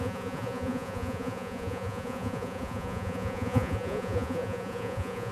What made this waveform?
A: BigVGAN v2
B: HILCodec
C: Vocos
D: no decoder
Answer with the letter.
C